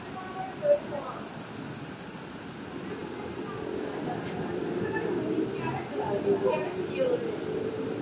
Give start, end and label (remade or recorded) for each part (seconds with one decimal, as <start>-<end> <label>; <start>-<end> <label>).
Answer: 0.0-8.0 recorded